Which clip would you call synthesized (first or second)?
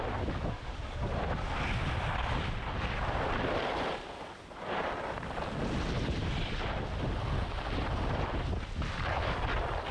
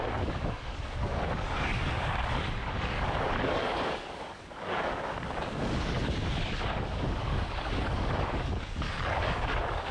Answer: second